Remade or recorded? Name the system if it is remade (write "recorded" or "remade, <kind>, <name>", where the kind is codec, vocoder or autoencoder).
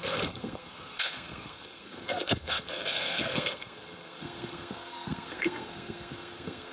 remade, codec, SNAC